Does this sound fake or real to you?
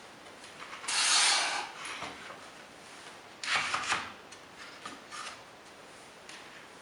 real